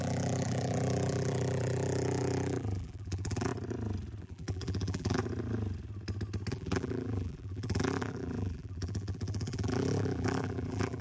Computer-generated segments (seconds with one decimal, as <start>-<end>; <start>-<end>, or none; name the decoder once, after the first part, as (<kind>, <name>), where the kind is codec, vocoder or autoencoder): 0.0-3.5 (vocoder, BigVGAN v2); 4.2-5.2; 6.5-11.0